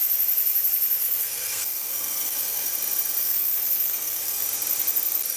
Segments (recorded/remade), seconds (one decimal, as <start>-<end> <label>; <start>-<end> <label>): 0.0-1.0 recorded; 1.0-2.7 remade; 2.7-3.2 recorded; 3.2-4.4 remade; 4.4-5.4 recorded